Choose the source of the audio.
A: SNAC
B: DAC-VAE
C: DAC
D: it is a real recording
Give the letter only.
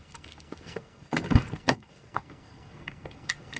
A